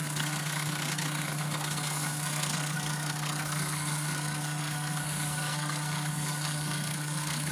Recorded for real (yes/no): no